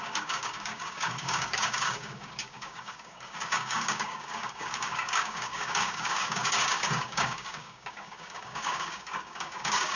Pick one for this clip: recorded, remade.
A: remade